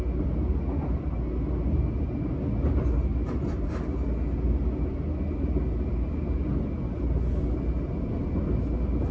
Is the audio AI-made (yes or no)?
no